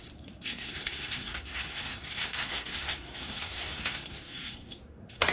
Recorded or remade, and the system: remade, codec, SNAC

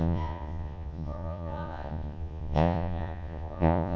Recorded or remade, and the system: remade, vocoder, Vocos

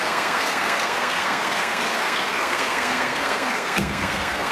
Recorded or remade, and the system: remade, codec, SNAC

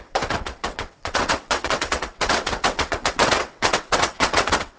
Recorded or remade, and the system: remade, vocoder, WaveNeXt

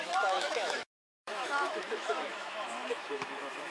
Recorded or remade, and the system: remade, autoencoder, DAC-VAE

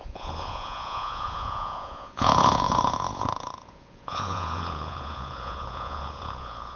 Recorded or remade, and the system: remade, vocoder, Vocos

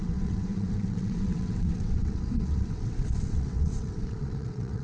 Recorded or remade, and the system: remade, vocoder, WaveNeXt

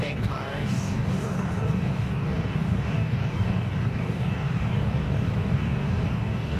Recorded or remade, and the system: remade, codec, DAC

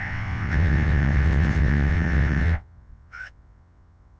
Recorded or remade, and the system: remade, vocoder, WaveNeXt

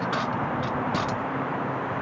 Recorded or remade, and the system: remade, vocoder, BigVGAN v2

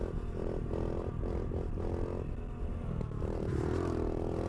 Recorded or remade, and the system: recorded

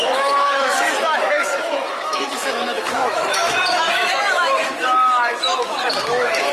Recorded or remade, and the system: remade, autoencoder, DAC-VAE